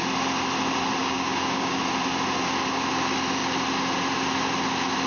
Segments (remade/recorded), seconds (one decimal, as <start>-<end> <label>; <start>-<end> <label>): 0.0-1.0 recorded; 1.0-1.8 remade; 1.8-5.1 recorded